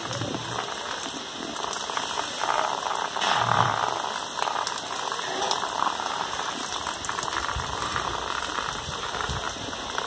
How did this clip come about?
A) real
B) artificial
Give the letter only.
A